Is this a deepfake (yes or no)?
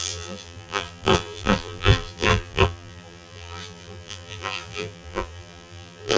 yes